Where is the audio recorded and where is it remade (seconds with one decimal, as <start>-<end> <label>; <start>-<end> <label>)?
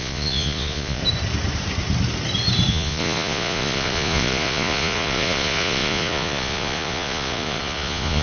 0.0-1.0 remade; 1.0-2.7 recorded; 2.7-8.2 remade